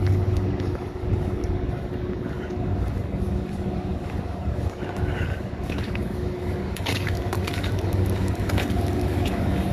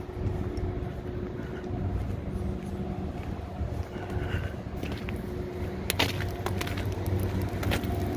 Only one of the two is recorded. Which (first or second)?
second